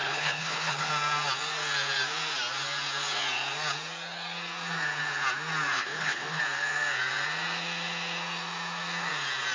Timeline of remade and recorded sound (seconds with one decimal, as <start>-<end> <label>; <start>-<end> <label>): 0.0-0.9 remade; 0.9-5.7 recorded; 5.7-6.4 remade; 6.4-9.5 recorded